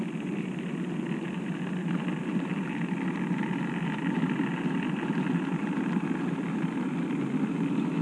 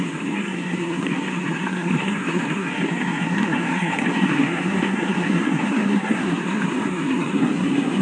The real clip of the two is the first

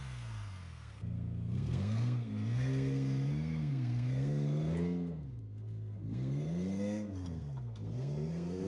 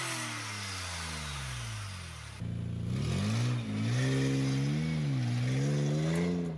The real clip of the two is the second